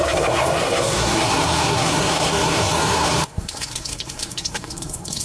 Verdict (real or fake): fake